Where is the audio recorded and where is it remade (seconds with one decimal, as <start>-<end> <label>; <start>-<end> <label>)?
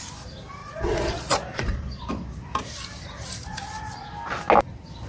0.0-0.6 recorded; 0.6-2.1 remade; 2.1-5.1 recorded